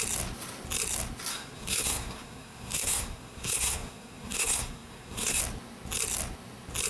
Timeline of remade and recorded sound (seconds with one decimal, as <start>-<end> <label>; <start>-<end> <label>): 0.0-1.3 recorded; 1.3-5.4 remade; 5.4-6.9 recorded